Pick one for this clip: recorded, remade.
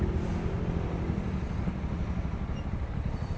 recorded